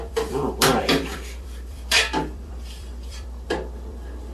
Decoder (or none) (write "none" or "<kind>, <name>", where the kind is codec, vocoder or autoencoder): vocoder, BigVGAN v2